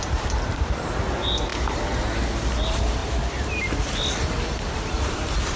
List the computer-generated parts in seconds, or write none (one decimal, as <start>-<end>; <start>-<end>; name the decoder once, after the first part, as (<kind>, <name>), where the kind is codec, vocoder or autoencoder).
0.0-1.5 (vocoder, BigVGAN v2); 2.6-3.0; 5.0-5.6